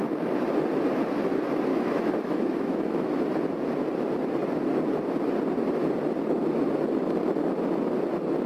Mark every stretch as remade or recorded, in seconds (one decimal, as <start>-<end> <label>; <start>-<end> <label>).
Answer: 0.0-1.7 recorded; 1.7-3.2 remade; 3.2-8.5 recorded